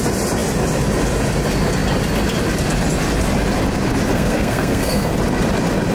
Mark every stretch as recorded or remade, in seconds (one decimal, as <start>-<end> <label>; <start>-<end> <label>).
0.0-4.1 recorded; 4.1-5.1 remade; 5.1-5.9 recorded